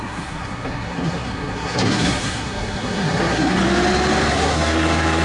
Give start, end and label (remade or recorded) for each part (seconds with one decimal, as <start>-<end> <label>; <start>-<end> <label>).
0.0-3.6 remade; 3.6-4.3 recorded; 4.3-5.2 remade